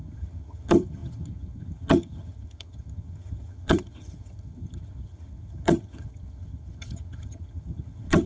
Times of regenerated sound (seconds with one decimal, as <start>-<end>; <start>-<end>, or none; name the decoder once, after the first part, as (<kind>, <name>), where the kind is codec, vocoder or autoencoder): 0.0-8.3 (vocoder, HiFi-GAN)